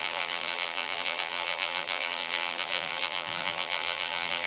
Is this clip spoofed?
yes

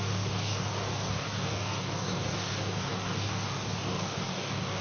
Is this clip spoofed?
yes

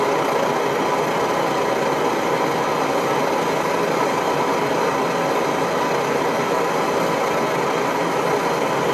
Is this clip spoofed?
no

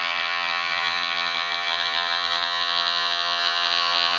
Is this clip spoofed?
yes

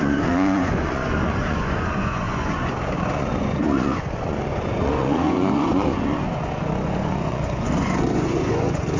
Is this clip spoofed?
yes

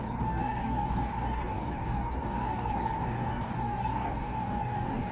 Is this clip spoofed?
yes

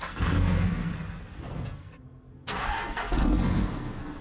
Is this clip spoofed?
yes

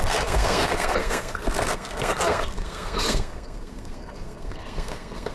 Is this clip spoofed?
yes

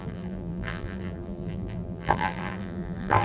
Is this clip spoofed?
yes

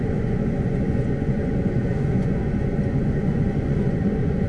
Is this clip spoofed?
yes